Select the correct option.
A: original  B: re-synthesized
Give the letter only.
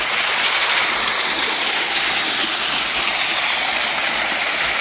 A